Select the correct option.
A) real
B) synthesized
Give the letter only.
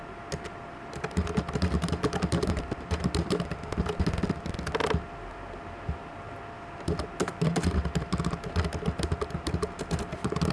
A